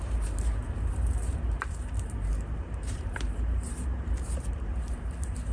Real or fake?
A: fake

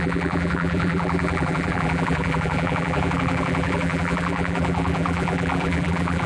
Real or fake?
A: fake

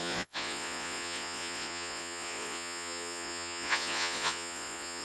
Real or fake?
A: fake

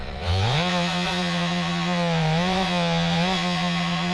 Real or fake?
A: fake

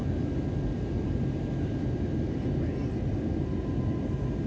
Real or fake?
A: real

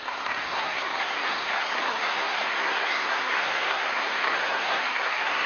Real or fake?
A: fake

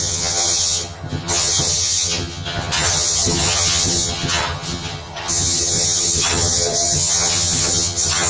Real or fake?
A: fake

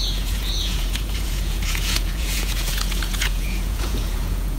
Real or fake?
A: fake